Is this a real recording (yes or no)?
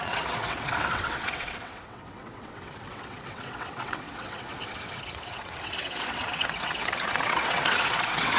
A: no